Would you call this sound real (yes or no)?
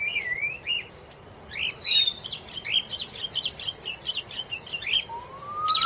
no